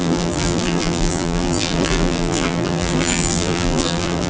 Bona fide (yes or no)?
no